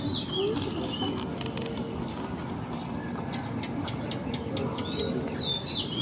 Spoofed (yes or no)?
no